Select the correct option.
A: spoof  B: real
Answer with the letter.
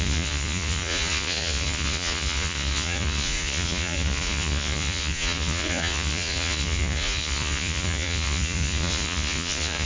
A